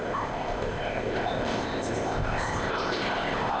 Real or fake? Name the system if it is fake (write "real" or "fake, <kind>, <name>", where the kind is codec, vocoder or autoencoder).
fake, codec, ZipCodec